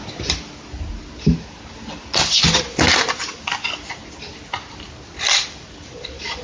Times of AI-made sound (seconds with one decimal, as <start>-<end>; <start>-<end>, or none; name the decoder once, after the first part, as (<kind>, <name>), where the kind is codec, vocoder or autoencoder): 0.9-4.0 (vocoder, BigVGAN v2); 5.3-6.4